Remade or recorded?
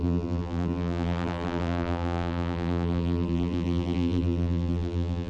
remade